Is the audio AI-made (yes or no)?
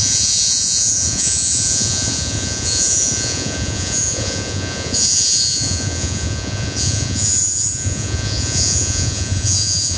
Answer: yes